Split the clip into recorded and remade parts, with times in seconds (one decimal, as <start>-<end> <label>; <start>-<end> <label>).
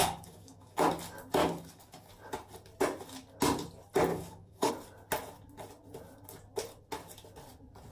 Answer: 0.0-0.9 remade; 0.9-1.4 recorded; 1.4-2.1 remade; 2.1-4.1 recorded; 4.1-4.7 remade; 4.7-7.9 recorded